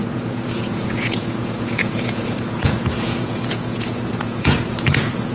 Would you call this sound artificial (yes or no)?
yes